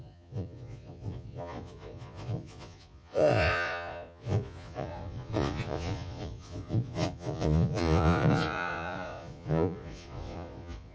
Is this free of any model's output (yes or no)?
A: no